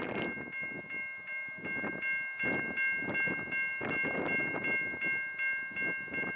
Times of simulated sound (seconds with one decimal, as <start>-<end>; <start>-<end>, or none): none